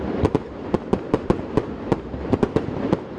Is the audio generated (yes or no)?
yes